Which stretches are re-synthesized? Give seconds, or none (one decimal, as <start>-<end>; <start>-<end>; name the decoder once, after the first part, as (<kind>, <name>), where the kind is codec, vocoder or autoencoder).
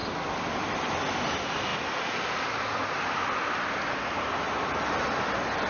0.0-0.8 (vocoder, BigVGAN v2)